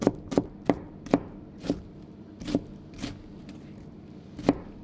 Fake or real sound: real